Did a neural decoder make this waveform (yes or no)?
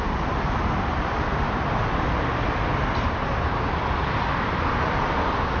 no